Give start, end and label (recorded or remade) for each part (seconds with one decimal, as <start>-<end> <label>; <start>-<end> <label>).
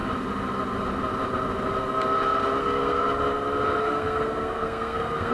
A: 0.0-2.6 recorded; 2.6-3.0 remade; 3.0-3.8 recorded; 3.8-5.3 remade